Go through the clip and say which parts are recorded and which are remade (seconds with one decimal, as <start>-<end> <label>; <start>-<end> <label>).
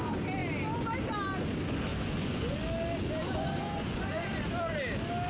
0.0-1.9 recorded; 1.9-2.6 remade; 2.6-3.2 recorded; 3.2-4.3 remade; 4.3-5.3 recorded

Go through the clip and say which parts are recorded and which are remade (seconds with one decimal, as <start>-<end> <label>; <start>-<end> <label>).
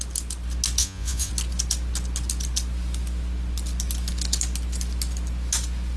0.0-0.8 recorded; 0.8-1.3 remade; 1.3-6.0 recorded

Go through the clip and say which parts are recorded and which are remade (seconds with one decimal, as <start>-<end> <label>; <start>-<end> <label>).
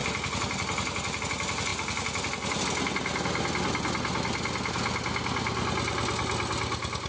0.0-7.1 recorded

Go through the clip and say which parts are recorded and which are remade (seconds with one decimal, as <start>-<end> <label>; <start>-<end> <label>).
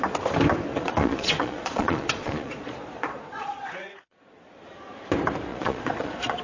0.0-0.7 recorded; 0.7-4.5 remade; 4.5-5.5 recorded; 5.5-6.4 remade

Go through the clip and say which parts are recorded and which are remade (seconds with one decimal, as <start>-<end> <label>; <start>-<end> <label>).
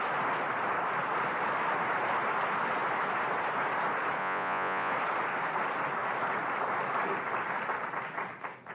0.0-4.2 recorded; 4.2-4.9 remade; 4.9-8.7 recorded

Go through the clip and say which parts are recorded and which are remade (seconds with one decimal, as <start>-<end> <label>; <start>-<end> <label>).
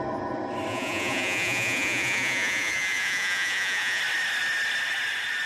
0.0-0.7 recorded; 0.7-4.0 remade; 4.0-5.5 recorded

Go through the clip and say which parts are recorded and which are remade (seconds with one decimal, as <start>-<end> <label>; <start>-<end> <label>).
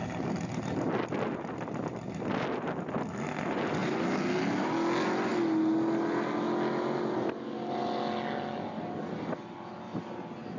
0.0-10.6 recorded